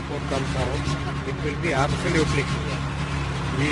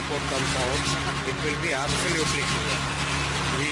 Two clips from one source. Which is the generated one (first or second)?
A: first